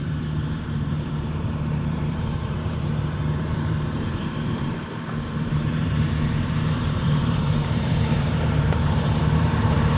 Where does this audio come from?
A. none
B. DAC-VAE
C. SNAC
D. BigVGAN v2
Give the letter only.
D